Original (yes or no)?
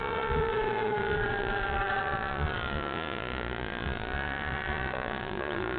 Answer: no